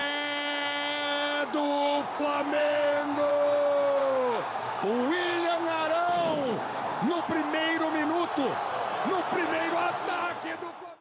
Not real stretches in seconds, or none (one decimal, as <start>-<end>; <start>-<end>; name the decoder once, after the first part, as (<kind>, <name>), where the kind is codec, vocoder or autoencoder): 0.0-2.2 (codec, DAC); 2.6-3.3; 4.0-7.2